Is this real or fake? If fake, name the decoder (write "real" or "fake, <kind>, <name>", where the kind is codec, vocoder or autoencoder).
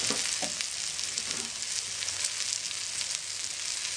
real